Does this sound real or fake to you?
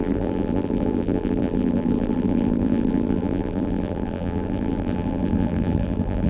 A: fake